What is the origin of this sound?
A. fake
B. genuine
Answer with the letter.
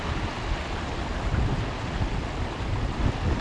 B